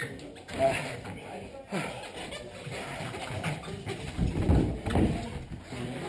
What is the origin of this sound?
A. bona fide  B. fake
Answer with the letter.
A